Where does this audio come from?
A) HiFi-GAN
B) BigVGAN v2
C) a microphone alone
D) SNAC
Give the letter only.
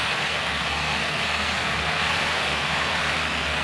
D